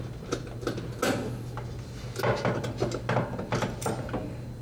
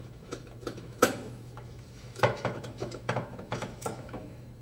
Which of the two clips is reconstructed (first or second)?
second